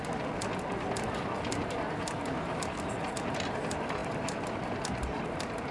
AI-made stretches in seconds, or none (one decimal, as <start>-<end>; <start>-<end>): none